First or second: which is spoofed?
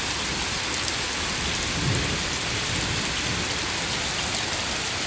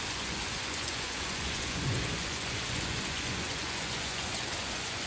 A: second